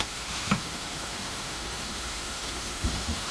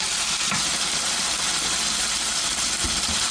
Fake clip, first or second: first